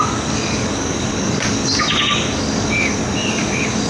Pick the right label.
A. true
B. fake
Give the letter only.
B